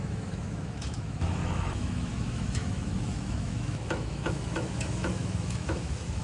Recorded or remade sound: remade